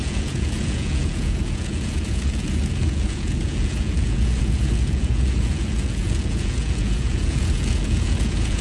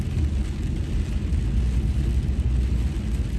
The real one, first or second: second